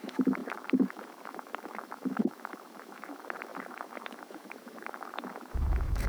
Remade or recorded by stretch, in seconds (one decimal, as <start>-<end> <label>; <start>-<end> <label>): 0.0-6.1 remade